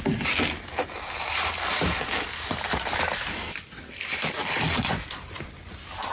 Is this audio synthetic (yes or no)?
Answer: no